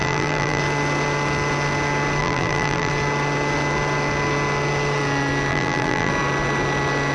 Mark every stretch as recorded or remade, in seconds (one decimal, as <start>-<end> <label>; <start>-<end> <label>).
0.0-0.6 remade; 0.6-2.2 recorded; 2.2-2.9 remade; 2.9-5.5 recorded; 5.5-6.1 remade; 6.1-7.1 recorded